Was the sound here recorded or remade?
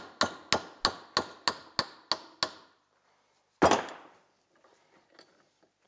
recorded